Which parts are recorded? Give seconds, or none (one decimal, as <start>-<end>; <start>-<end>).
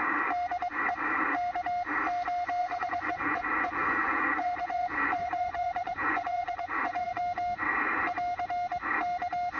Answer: 0.0-2.6; 7.2-9.6